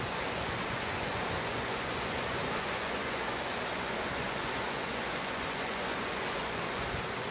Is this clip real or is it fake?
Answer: fake